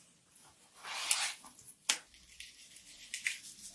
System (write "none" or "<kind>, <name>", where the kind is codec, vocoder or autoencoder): none